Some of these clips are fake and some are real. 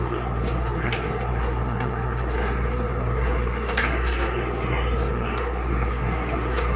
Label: fake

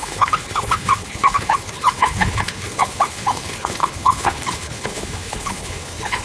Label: fake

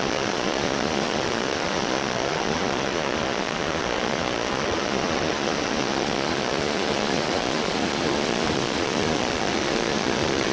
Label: fake